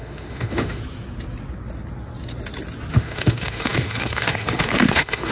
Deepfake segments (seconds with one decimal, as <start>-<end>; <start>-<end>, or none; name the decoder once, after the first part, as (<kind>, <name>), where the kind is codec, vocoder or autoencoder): 0.0-0.8 (autoencoder, DAC-VAE); 2.9-5.3